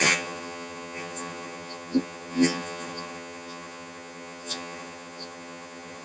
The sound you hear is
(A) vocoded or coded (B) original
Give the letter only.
A